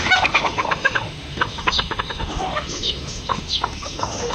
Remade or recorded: remade